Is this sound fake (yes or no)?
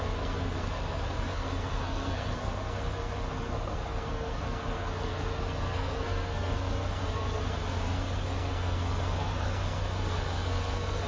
yes